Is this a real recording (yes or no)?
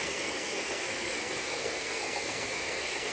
no